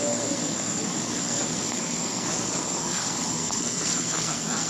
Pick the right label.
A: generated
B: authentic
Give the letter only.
A